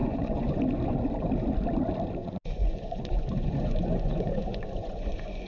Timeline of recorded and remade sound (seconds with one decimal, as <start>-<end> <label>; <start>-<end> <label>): 0.0-0.6 remade; 0.6-2.2 recorded; 2.2-5.5 remade